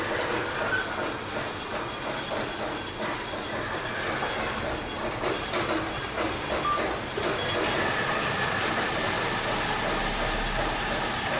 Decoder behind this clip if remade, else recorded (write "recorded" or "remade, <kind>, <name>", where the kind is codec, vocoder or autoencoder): recorded